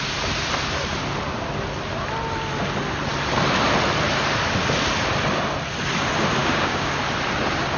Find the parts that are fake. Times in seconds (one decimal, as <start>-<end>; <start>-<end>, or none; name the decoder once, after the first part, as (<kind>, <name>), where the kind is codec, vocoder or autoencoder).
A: 6.4-6.9 (codec, DAC)